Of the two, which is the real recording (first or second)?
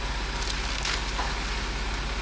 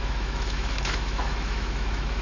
first